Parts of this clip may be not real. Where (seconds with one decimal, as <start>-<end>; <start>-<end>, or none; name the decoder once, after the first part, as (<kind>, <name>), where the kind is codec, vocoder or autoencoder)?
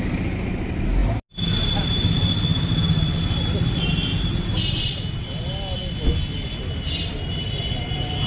none